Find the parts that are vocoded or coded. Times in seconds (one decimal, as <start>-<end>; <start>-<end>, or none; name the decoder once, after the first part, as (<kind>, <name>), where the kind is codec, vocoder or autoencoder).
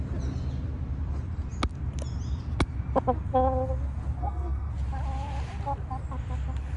4.2-4.7 (codec, SNAC)